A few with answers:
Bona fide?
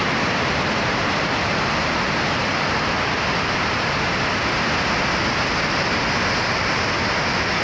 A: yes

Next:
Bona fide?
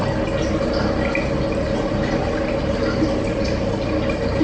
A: yes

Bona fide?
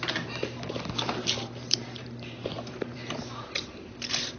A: no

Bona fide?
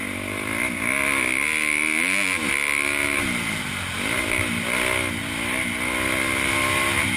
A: yes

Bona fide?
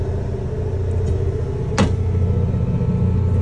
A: yes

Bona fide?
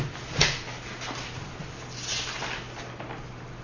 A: yes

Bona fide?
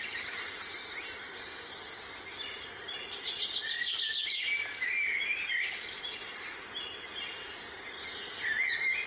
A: yes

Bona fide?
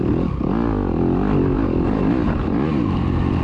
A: yes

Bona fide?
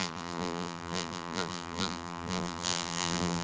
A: no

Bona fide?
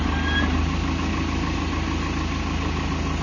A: yes